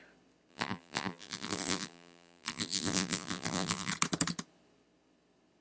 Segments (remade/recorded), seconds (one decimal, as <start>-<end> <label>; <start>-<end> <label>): 0.0-0.5 recorded; 0.5-3.9 remade; 3.9-5.6 recorded